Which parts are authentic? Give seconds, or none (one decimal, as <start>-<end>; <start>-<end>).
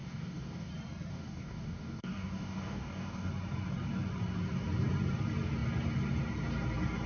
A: 0.7-1.1; 3.3-7.1